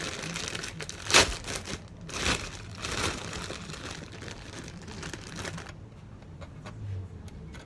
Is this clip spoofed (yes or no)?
no